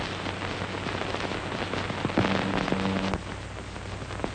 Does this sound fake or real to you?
real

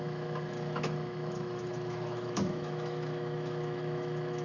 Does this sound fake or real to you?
fake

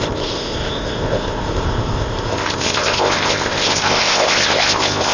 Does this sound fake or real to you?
fake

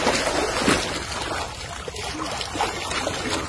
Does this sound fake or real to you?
real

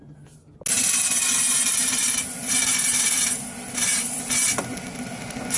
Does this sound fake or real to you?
real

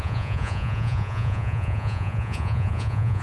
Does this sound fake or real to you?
fake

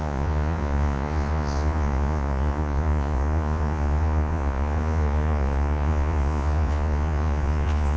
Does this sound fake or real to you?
fake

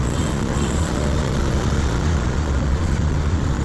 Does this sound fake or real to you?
fake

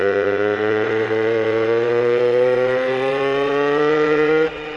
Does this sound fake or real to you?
fake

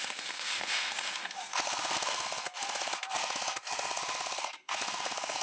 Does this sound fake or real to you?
fake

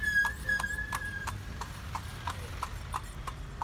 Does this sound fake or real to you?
fake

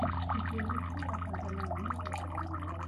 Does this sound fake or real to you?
real